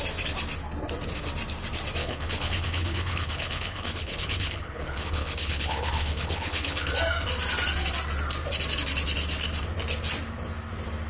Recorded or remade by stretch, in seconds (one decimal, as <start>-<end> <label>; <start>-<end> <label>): 0.0-2.0 recorded; 2.0-6.9 remade; 6.9-11.1 recorded